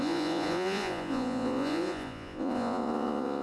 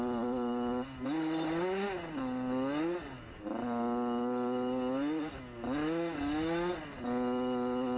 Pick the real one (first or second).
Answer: second